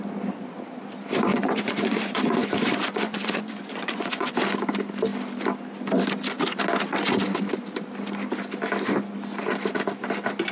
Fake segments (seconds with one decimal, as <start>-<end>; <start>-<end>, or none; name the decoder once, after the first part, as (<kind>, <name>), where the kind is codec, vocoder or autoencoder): 1.3-4.3 (vocoder, Vocos)